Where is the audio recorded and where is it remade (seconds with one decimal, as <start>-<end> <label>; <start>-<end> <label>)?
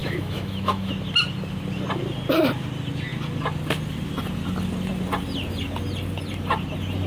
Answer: 0.0-0.9 remade; 0.9-7.1 recorded